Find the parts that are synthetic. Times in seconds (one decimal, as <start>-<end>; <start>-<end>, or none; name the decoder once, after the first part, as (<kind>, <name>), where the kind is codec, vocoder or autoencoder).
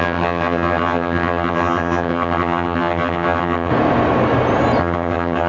0.0-3.7 (vocoder, HiFi-GAN); 4.8-5.5